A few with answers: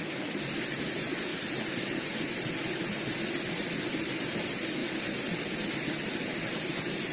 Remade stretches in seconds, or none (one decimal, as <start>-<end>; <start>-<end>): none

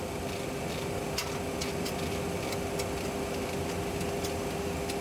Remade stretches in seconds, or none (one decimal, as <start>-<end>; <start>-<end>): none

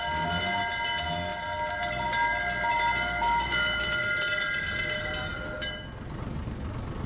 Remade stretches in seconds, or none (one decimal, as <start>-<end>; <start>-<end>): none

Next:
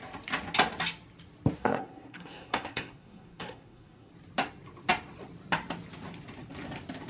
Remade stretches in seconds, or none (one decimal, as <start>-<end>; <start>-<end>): 1.6-4.1

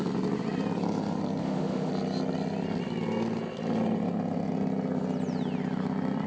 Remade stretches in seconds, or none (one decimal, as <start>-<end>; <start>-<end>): 1.4-1.9

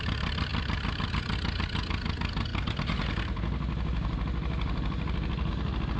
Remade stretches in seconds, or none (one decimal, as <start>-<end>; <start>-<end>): none

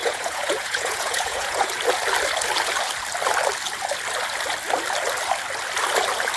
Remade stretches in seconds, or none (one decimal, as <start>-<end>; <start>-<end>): 0.0-1.7